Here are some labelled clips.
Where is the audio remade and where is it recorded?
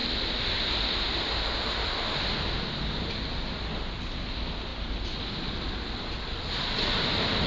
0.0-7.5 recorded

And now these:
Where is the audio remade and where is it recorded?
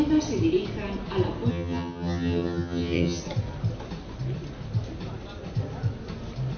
0.0-1.5 recorded; 1.5-3.2 remade; 3.2-6.6 recorded